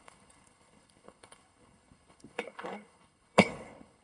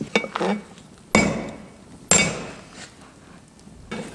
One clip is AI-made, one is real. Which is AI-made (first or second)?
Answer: first